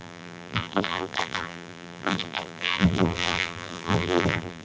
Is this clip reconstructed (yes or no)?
yes